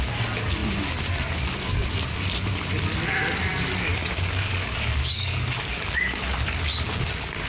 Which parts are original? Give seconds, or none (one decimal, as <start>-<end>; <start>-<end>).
0.0-3.9; 7.0-7.5